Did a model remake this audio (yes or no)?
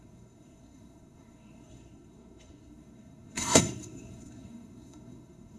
yes